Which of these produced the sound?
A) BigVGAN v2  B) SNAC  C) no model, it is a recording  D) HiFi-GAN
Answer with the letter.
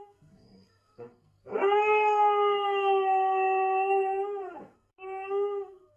B